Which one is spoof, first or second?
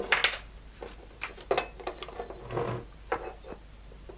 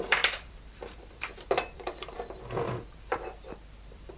second